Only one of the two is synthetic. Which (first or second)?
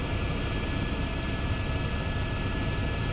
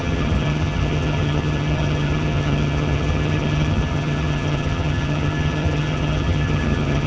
second